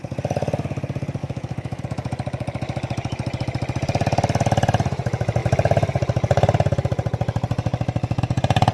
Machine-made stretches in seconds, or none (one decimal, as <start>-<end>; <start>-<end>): 1.2-1.8

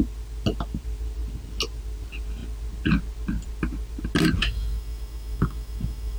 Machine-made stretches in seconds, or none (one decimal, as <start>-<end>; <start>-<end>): 4.4-6.2

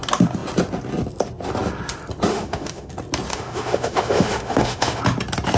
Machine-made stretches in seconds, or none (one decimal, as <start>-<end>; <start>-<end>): 2.3-2.9; 3.3-5.0

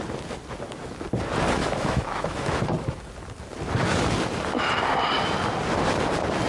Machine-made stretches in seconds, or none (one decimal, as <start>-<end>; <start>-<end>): 1.6-2.6

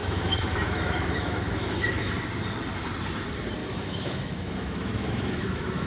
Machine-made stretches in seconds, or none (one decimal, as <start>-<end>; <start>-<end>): 0.0-2.1; 3.6-5.9

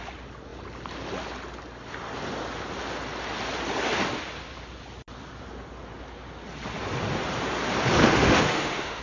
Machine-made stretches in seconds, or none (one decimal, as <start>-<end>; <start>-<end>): 8.0-9.0

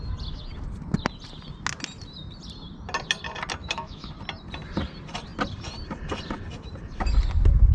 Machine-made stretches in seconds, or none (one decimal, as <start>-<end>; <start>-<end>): 3.6-4.1